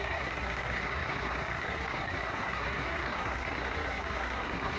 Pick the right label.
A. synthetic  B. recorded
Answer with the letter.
A